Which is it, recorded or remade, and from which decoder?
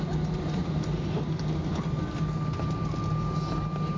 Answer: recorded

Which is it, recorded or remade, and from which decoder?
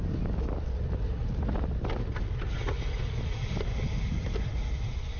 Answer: recorded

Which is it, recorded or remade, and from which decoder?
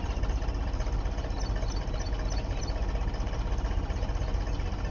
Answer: recorded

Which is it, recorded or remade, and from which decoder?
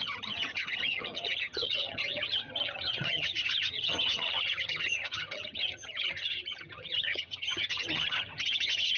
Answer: remade, vocoder, HiFi-GAN